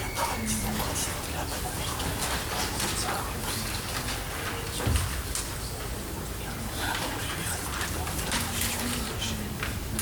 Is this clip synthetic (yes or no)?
no